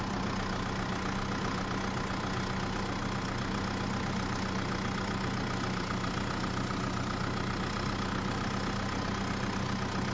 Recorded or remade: recorded